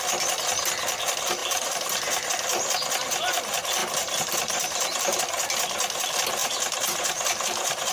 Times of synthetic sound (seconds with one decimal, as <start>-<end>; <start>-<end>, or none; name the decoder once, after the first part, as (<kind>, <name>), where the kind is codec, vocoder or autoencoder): 1.4-2.3 (vocoder, BigVGAN v2); 3.8-5.2; 6.4-7.9